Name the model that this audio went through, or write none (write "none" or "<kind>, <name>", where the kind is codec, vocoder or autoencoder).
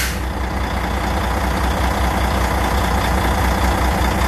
none